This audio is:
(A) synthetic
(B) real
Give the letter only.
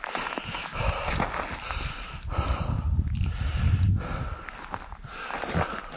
B